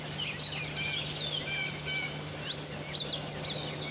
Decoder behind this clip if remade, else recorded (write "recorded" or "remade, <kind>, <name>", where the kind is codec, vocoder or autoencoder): recorded